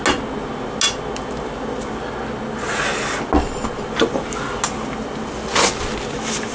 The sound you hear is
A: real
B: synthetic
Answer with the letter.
A